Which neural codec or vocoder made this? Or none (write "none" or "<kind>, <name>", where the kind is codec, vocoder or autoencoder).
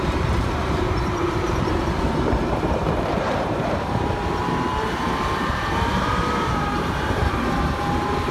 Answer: vocoder, BigVGAN v2